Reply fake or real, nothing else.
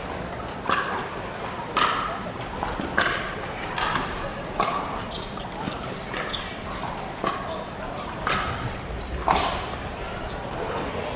fake